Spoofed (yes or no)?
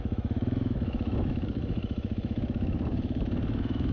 yes